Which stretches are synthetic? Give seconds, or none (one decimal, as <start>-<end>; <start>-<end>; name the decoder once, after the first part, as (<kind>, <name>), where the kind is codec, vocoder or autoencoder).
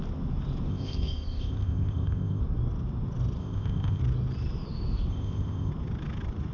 0.7-2.4 (codec, ZipCodec); 3.4-4.0; 5.1-5.7